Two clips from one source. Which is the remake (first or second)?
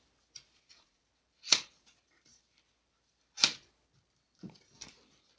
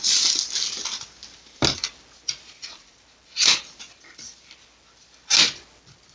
first